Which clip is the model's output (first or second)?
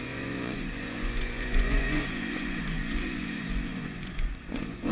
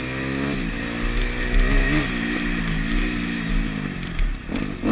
first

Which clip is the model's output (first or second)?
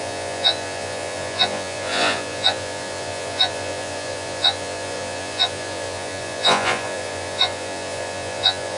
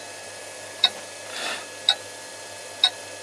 first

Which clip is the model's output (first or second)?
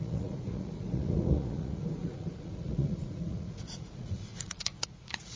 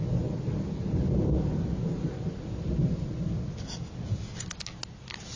first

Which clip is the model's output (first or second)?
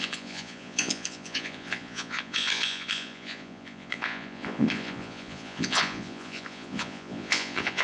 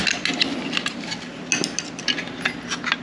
first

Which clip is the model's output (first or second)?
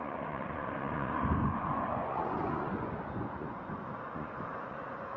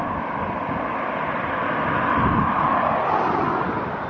first